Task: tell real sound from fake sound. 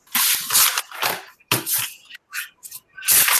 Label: real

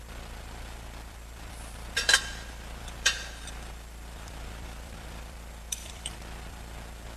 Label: fake